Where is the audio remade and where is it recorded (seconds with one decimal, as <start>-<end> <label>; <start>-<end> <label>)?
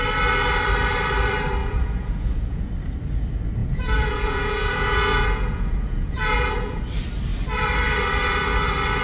0.0-1.6 recorded; 1.6-2.7 remade; 2.7-3.6 recorded; 3.6-6.8 remade; 6.8-9.0 recorded